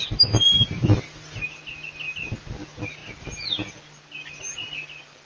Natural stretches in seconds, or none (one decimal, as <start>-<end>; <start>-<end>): 0.0-5.3